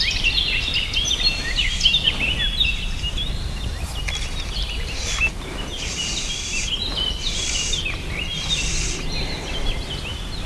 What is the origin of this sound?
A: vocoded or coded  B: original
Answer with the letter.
B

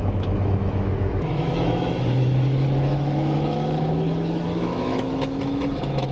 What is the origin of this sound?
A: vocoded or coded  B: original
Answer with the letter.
A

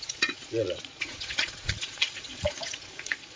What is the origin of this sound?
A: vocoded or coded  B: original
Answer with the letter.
A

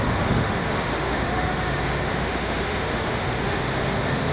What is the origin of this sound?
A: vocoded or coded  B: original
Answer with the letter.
A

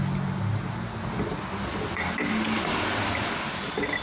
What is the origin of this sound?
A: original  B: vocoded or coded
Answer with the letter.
A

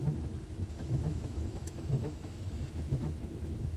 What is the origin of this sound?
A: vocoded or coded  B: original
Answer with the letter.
A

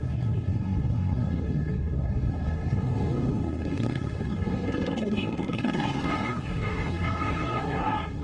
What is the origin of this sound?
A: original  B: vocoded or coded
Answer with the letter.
B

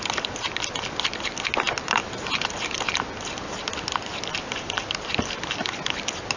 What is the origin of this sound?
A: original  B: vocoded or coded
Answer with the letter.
A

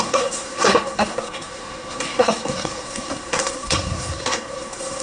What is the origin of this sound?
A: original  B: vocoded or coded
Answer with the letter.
B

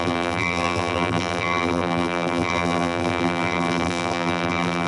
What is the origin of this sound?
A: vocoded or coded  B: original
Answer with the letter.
A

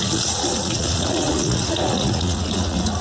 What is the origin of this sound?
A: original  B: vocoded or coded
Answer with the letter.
B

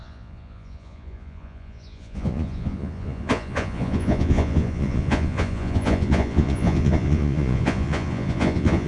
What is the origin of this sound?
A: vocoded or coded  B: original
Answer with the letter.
A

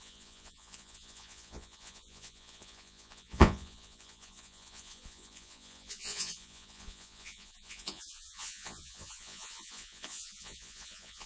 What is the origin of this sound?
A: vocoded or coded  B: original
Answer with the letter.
A